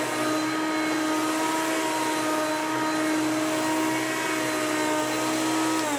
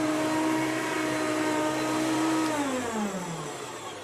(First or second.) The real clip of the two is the first